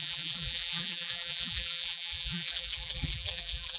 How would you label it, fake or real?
fake